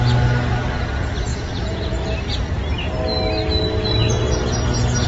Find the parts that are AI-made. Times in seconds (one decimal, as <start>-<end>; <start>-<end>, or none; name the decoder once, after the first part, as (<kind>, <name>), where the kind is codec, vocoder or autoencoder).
1.3-2.0 (vocoder, Vocos)